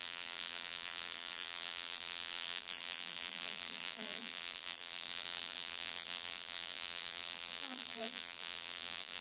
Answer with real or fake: fake